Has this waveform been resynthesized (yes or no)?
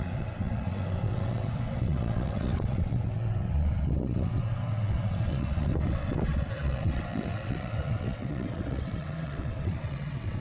yes